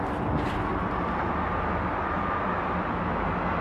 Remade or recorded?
recorded